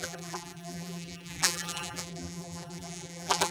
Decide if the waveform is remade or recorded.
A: remade